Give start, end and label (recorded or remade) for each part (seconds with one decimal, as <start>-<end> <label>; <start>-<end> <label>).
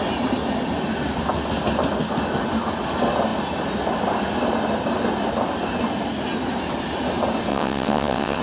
0.0-7.5 recorded; 7.5-8.4 remade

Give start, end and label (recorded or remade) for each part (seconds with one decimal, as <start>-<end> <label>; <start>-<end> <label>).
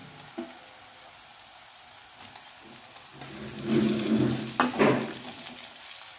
0.0-6.2 recorded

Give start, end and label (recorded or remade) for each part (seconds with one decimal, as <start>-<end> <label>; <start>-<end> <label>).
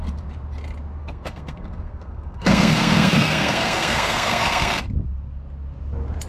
0.0-1.0 recorded; 1.0-4.8 remade; 4.8-6.3 recorded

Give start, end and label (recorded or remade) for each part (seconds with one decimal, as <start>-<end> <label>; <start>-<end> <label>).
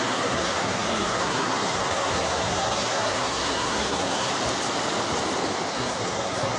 0.0-4.3 remade; 4.3-5.7 recorded; 5.7-6.6 remade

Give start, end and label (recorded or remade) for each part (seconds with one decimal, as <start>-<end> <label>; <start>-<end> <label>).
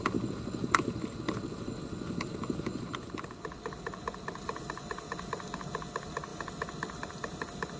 0.0-7.8 recorded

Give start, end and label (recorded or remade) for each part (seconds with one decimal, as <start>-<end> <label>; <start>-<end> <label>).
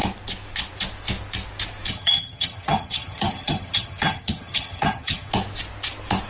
0.0-1.9 recorded; 1.9-5.3 remade; 5.3-6.3 recorded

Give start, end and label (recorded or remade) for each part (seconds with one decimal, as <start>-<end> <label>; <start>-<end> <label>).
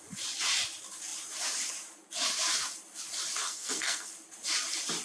0.0-3.4 recorded; 3.4-4.1 remade; 4.1-5.0 recorded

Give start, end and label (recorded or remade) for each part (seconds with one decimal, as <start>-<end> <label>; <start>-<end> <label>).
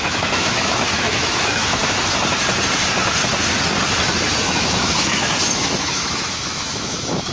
0.0-1.8 remade; 1.8-4.4 recorded; 4.4-7.3 remade